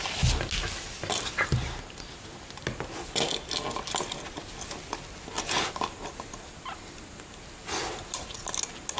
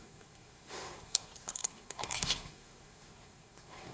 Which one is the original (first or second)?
first